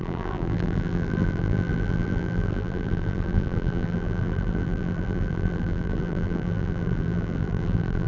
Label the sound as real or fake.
fake